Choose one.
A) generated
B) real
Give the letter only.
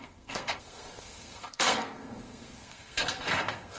A